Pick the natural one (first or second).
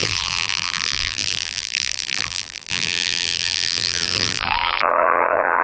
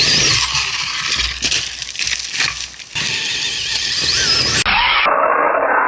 second